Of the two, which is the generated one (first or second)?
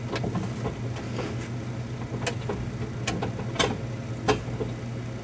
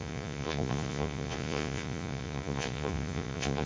second